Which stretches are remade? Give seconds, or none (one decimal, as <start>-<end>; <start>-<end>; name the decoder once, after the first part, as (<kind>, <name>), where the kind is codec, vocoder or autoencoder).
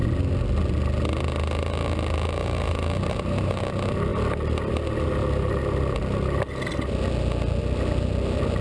2.4-3.6 (vocoder, BigVGAN v2)